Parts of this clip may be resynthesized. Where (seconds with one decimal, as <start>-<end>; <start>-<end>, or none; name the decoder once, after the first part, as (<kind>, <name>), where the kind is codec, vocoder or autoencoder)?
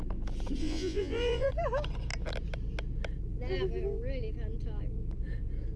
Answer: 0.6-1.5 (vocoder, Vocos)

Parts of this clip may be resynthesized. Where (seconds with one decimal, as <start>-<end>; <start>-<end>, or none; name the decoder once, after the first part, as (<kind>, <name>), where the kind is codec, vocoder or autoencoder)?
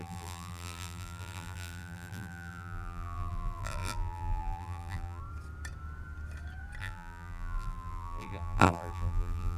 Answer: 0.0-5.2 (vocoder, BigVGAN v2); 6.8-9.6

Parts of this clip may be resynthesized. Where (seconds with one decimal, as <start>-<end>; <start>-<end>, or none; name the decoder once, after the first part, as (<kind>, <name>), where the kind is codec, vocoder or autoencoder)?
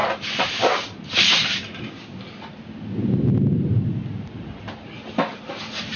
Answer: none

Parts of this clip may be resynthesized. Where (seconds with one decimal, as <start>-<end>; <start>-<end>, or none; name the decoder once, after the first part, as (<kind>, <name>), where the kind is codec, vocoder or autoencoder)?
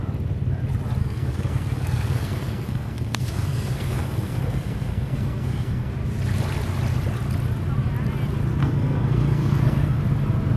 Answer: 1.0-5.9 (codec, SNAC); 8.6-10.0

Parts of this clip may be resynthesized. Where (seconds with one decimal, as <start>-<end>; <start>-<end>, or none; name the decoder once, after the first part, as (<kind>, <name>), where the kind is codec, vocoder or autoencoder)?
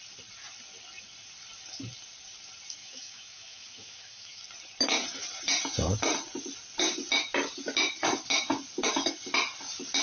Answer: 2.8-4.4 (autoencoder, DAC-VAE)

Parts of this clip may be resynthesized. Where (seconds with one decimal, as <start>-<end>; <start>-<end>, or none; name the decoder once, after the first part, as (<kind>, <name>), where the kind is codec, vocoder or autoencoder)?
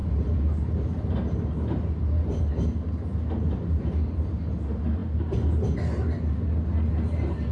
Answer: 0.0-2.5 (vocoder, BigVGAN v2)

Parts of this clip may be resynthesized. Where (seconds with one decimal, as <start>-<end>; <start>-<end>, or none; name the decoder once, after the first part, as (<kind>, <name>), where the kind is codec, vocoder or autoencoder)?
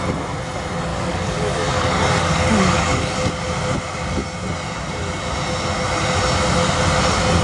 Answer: 0.9-3.3 (codec, DAC)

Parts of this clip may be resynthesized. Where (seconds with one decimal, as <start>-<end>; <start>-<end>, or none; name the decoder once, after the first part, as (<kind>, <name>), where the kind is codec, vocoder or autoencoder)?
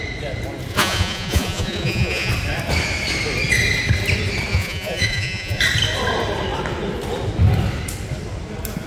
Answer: 0.7-2.3 (vocoder, Vocos); 4.5-5.6